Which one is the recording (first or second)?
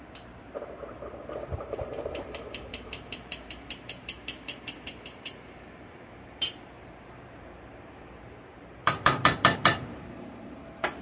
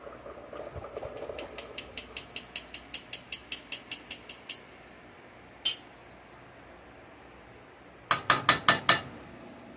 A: second